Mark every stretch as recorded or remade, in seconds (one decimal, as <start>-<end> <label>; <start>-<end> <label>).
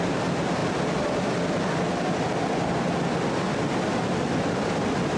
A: 0.0-5.2 recorded